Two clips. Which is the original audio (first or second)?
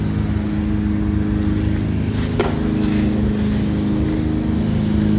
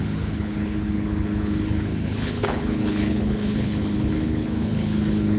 first